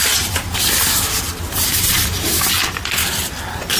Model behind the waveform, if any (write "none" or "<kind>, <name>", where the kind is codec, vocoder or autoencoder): none